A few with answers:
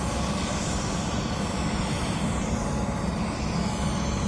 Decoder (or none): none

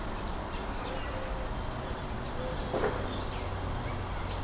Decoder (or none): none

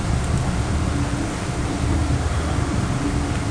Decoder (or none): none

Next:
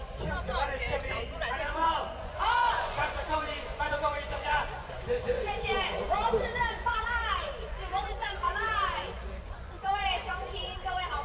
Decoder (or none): vocoder, Vocos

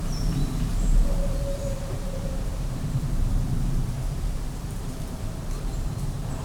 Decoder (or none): vocoder, BigVGAN v2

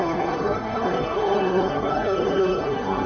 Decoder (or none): codec, SNAC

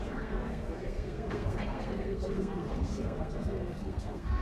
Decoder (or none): codec, SNAC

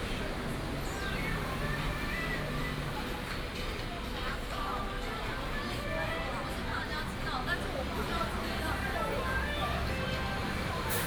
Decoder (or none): none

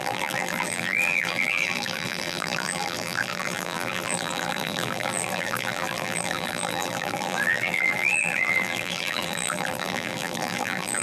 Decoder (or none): vocoder, BigVGAN v2